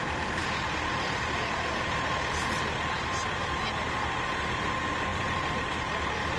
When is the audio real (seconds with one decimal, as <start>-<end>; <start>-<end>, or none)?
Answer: 0.0-6.4